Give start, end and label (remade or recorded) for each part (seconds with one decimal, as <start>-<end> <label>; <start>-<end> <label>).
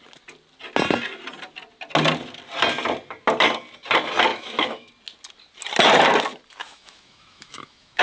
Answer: 0.0-4.3 recorded; 4.3-4.9 remade; 4.9-6.6 recorded; 6.6-8.0 remade